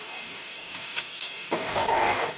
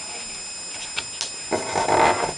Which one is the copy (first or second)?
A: first